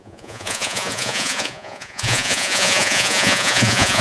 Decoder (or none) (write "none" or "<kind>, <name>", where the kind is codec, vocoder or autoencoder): vocoder, Vocos